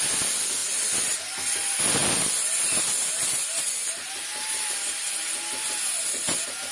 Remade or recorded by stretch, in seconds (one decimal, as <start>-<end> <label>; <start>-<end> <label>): 0.0-6.7 recorded